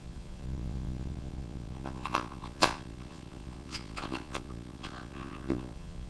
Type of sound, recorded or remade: remade